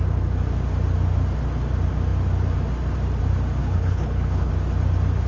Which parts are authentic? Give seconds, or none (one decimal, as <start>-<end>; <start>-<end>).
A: 0.0-3.6; 4.5-5.3